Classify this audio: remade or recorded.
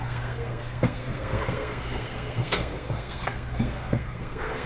remade